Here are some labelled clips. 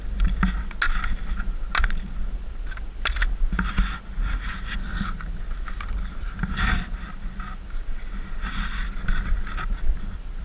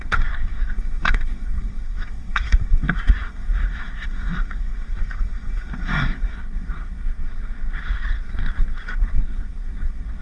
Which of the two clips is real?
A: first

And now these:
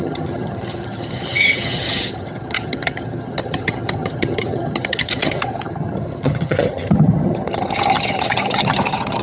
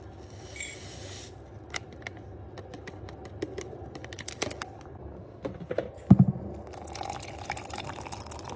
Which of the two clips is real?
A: second